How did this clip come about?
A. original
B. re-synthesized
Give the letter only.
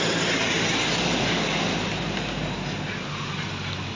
A